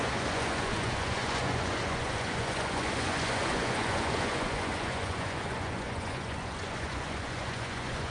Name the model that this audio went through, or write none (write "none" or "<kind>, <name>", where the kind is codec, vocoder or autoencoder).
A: vocoder, Vocos